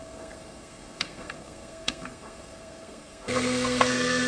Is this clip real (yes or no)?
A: no